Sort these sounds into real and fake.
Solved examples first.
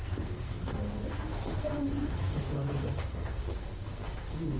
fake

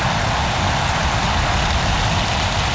real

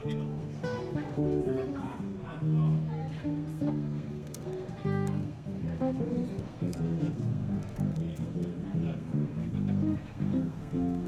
fake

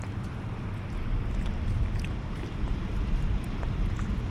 real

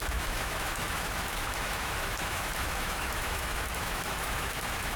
fake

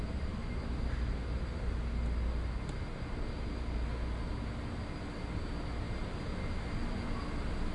real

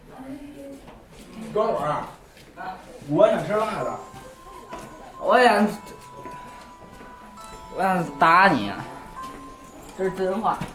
real